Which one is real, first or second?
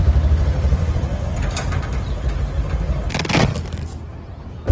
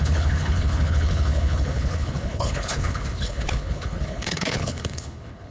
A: first